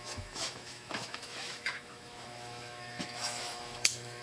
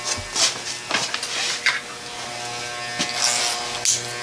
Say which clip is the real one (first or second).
second